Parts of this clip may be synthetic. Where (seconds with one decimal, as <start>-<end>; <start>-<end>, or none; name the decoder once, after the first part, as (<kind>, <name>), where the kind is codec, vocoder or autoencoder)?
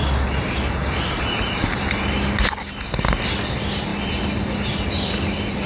none